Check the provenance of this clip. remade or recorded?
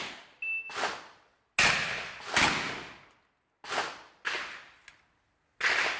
recorded